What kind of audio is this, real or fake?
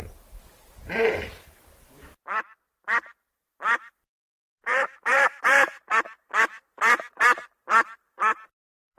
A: fake